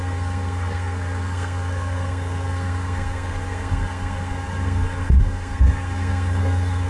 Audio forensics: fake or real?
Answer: fake